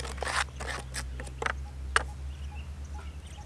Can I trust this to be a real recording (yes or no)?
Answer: yes